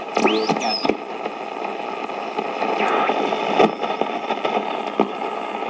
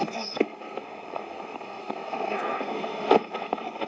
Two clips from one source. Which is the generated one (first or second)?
second